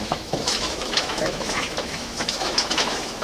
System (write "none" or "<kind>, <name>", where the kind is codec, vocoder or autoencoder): autoencoder, DAC-VAE